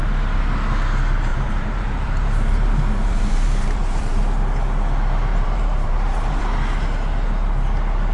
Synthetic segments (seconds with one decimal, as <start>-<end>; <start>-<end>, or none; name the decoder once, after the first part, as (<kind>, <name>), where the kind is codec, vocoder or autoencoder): 1.3-4.2 (vocoder, BigVGAN v2); 5.3-6.4